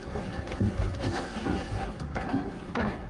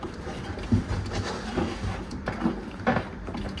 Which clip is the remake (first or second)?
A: first